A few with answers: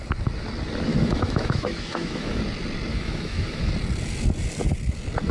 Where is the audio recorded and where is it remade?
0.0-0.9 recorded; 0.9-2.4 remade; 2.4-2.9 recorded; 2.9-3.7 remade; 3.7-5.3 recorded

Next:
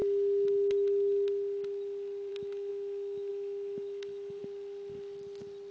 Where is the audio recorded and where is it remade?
0.0-2.3 recorded; 2.3-4.4 remade; 4.4-5.7 recorded